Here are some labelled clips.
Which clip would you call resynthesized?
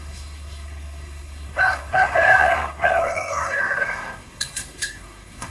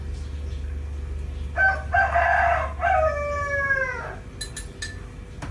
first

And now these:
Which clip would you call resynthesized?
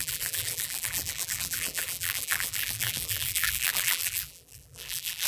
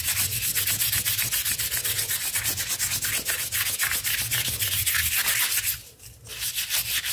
first